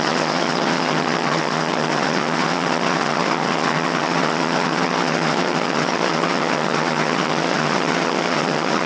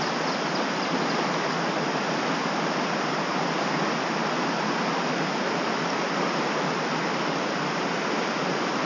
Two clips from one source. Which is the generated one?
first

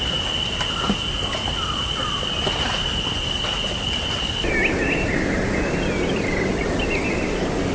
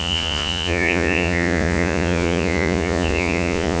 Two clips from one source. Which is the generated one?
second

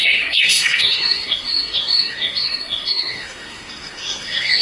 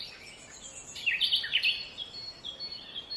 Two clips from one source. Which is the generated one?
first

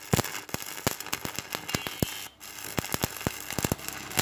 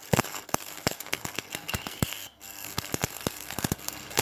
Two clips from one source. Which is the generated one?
second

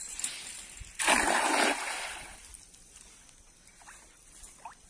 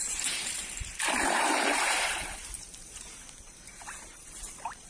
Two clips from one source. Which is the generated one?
second